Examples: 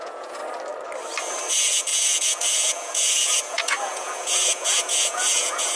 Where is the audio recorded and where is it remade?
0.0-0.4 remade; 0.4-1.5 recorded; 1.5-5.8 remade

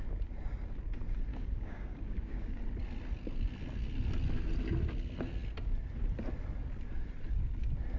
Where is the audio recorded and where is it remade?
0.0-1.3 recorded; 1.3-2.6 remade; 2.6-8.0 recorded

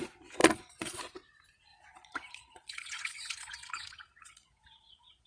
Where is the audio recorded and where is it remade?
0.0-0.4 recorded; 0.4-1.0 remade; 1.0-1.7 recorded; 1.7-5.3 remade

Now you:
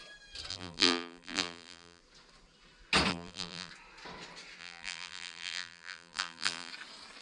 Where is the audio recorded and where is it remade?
0.0-0.5 recorded; 0.5-2.0 remade; 2.0-3.1 recorded; 3.1-3.7 remade; 3.7-4.6 recorded; 4.6-6.7 remade; 6.7-7.2 recorded

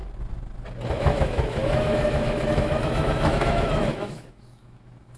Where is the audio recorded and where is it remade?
0.0-0.9 recorded; 0.9-5.2 remade